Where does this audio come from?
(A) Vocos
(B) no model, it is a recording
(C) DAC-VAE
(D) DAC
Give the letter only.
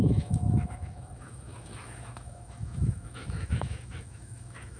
C